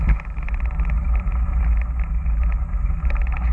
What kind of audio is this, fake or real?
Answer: real